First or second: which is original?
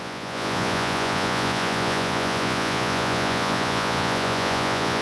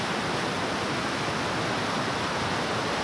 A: second